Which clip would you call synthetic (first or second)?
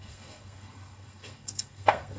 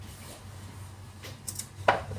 first